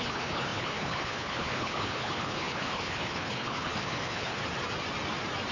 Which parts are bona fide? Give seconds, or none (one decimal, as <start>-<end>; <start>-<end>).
4.4-5.5